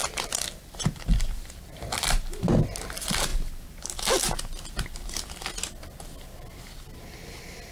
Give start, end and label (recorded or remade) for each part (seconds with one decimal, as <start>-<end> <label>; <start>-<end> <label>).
0.0-1.8 remade; 1.8-7.7 recorded